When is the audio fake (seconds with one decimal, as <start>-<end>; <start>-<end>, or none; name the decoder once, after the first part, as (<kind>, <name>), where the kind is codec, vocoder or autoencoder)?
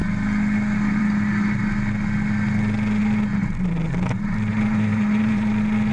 4.5-5.5 (vocoder, BigVGAN v2)